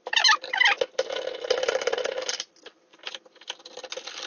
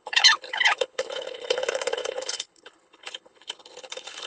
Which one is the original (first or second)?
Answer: first